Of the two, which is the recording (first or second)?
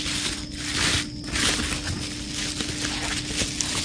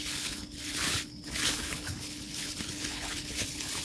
first